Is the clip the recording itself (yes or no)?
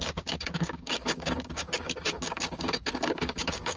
no